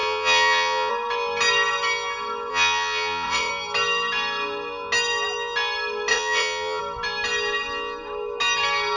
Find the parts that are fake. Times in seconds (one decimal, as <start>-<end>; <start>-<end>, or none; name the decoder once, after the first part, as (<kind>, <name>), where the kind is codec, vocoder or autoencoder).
0.0-0.9 (vocoder, Vocos); 2.5-3.5; 6.1-6.8